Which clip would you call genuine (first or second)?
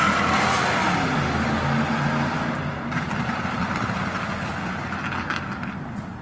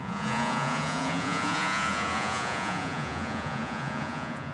first